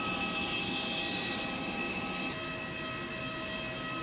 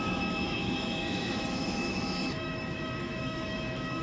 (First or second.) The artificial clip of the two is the second